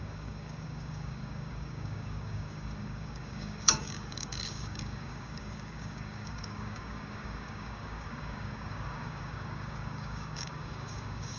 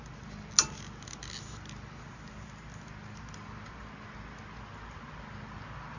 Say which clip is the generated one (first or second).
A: first